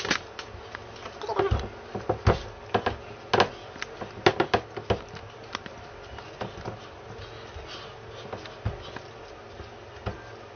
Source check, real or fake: real